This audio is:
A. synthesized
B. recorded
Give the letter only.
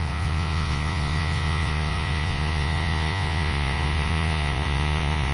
A